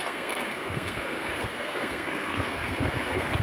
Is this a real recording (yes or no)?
no